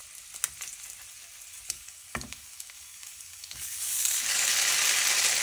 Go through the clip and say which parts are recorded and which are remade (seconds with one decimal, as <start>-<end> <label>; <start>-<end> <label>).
0.0-1.5 recorded; 1.5-4.5 remade; 4.5-5.4 recorded